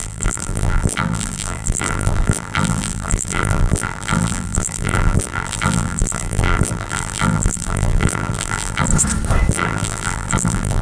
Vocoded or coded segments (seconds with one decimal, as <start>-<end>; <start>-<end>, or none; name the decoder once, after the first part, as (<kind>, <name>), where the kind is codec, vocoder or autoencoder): 0.0-8.9 (vocoder, BigVGAN v2); 9.5-10.8